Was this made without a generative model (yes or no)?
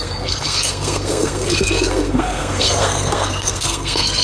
no